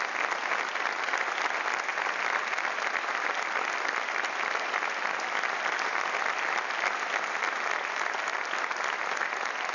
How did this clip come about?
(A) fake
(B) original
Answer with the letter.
B